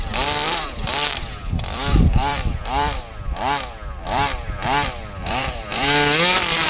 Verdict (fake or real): fake